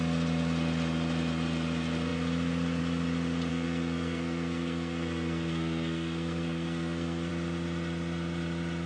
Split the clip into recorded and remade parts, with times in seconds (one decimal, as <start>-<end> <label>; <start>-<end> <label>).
0.0-3.5 recorded; 3.5-7.3 remade; 7.3-8.9 recorded